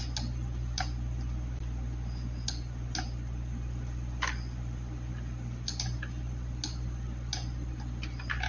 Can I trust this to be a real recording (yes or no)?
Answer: yes